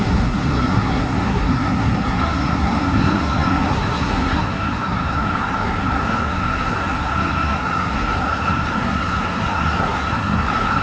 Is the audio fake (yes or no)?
yes